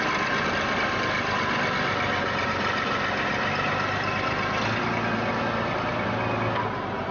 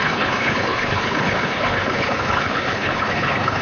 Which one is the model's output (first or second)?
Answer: second